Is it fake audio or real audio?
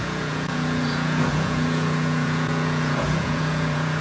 fake